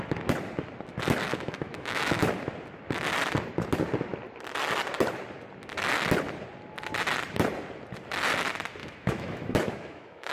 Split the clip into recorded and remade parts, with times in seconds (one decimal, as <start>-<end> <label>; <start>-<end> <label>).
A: 0.0-1.3 recorded; 1.3-2.2 remade; 2.2-8.8 recorded; 8.8-10.3 remade